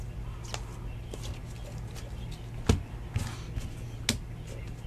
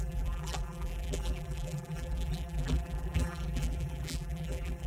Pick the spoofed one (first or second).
second